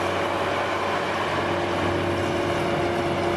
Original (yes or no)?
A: yes